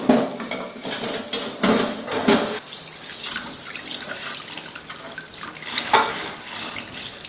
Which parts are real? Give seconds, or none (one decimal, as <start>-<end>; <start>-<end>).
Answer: 0.0-7.3